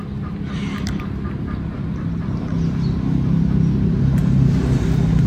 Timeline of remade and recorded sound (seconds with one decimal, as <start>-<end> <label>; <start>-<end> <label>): 0.0-5.3 recorded